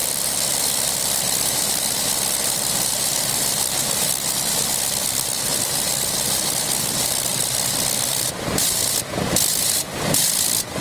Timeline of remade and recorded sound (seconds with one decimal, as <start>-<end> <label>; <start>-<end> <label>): 0.0-0.6 remade; 0.6-7.3 recorded; 7.3-8.6 remade; 8.6-10.8 recorded